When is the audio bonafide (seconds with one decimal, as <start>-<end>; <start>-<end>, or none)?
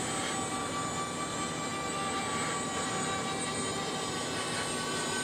0.0-5.2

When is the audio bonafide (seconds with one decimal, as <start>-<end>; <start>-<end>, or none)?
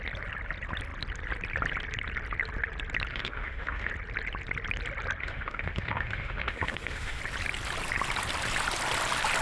0.0-3.1; 3.9-5.2; 7.2-9.4